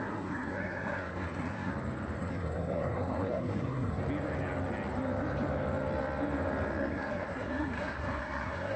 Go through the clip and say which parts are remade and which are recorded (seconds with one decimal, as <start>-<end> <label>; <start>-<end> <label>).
0.0-1.7 remade; 1.7-2.2 recorded; 2.2-4.0 remade; 4.0-6.8 recorded; 6.8-8.8 remade